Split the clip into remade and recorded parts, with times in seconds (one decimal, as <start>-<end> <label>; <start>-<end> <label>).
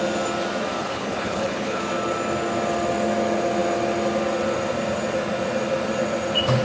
0.0-0.8 recorded; 0.8-1.8 remade; 1.8-6.6 recorded